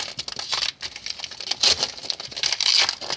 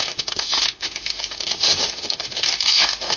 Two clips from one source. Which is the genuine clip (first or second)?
first